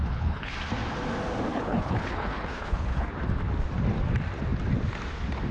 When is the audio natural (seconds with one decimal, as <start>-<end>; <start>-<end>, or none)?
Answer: 0.5-1.5; 3.1-5.5